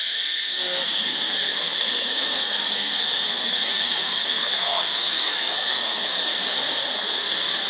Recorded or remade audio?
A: remade